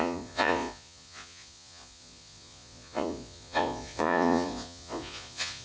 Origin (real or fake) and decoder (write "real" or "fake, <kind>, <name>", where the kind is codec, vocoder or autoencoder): fake, vocoder, Vocos